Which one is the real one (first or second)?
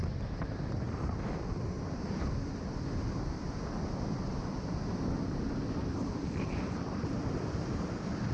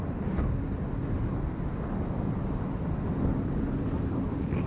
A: second